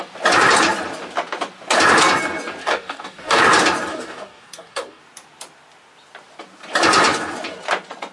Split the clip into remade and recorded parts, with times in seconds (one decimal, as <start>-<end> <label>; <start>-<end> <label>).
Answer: 0.0-2.6 recorded; 2.6-3.4 remade; 3.4-3.9 recorded; 3.9-5.0 remade; 5.0-8.1 recorded